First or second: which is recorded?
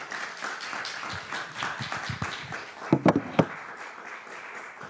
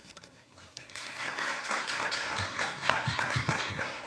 first